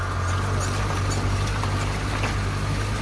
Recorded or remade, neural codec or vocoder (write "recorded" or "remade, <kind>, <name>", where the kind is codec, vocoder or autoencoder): recorded